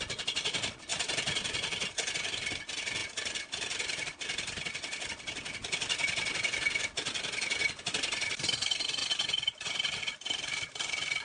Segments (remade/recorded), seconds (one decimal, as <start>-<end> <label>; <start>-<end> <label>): 0.0-5.6 remade; 5.6-7.9 recorded; 7.9-9.0 remade; 9.0-10.0 recorded; 10.0-11.2 remade